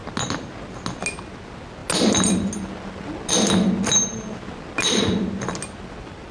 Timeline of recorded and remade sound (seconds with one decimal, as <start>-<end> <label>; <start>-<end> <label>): 0.0-6.3 recorded